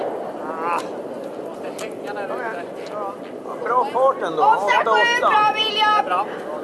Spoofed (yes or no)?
yes